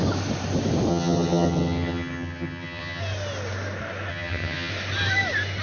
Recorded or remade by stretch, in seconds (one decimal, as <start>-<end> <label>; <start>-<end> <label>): 0.0-0.9 recorded; 0.9-3.0 remade; 3.0-4.1 recorded; 4.1-4.7 remade; 4.7-5.6 recorded